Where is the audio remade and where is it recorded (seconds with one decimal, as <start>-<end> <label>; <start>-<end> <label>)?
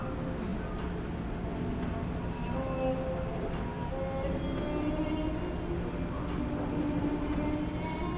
0.0-8.2 recorded